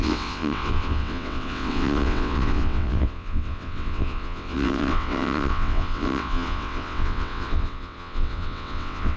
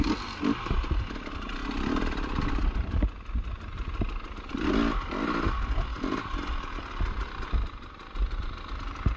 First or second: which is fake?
first